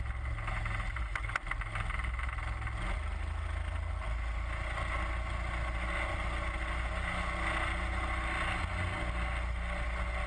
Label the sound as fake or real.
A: real